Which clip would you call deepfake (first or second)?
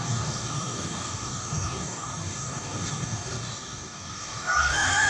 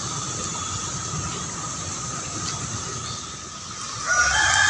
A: first